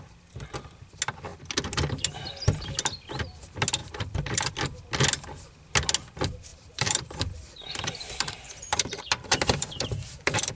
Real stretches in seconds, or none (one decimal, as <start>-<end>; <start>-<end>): 0.0-3.8; 4.5-6.5